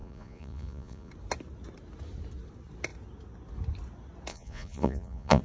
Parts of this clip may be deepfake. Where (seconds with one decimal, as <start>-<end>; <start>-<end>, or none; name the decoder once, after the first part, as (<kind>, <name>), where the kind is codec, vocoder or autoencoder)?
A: 0.0-1.1 (vocoder, Vocos); 4.3-5.4